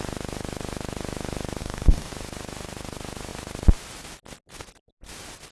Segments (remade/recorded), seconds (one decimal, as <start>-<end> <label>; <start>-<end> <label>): 0.0-1.6 recorded; 1.6-2.1 remade; 2.1-5.5 recorded